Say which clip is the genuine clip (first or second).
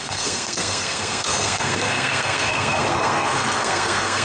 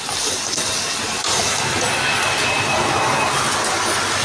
second